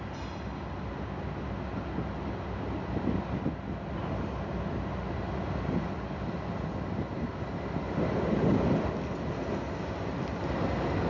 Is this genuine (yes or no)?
yes